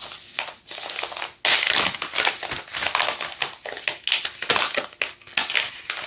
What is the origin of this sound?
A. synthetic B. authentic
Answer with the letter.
B